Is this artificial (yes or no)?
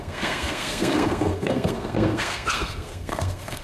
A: yes